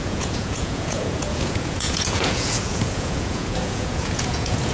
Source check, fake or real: fake